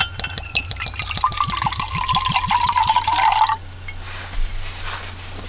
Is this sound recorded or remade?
recorded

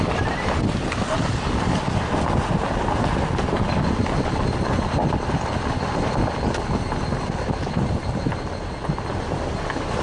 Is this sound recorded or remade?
recorded